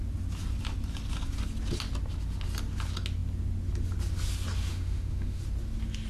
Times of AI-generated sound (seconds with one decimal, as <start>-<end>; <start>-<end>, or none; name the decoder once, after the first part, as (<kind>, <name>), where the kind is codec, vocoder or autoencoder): 4.7-5.4 (autoencoder, DAC-VAE)